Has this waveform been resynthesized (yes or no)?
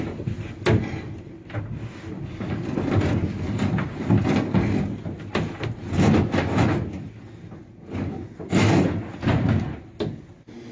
no